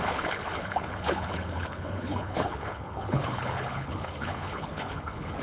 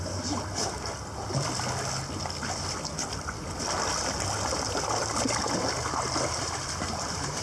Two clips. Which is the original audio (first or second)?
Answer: second